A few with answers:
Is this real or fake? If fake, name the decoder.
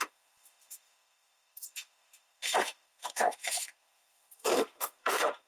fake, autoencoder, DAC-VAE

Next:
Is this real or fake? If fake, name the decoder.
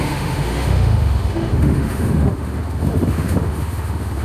fake, autoencoder, DAC-VAE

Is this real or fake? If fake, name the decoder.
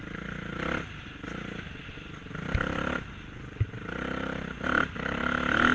real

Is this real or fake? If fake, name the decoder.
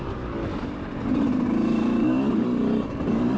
real